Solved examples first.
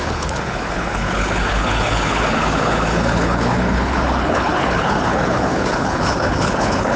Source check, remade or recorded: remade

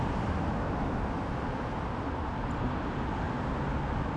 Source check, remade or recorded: recorded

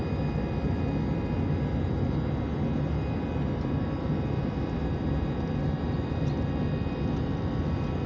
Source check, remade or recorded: recorded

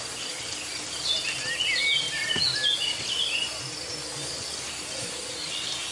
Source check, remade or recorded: recorded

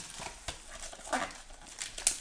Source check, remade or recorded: recorded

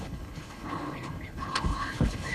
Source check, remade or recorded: remade